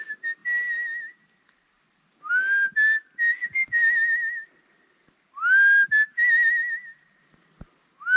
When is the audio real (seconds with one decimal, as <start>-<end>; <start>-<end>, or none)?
0.0-8.2